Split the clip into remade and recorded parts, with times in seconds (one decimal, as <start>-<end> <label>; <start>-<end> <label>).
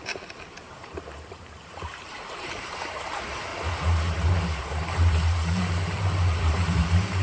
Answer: 0.0-3.5 remade; 3.5-4.6 recorded; 4.6-7.2 remade